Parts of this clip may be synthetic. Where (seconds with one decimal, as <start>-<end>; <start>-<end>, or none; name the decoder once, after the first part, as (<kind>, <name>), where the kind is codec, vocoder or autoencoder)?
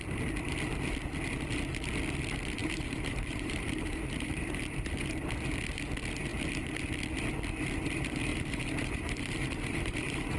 2.6-5.3 (vocoder, BigVGAN v2); 8.3-10.4